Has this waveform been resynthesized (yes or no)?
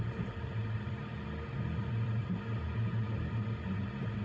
no